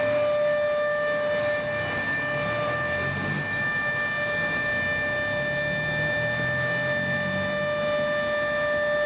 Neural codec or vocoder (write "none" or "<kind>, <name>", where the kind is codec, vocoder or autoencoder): none